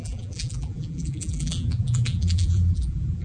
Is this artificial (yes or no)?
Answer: yes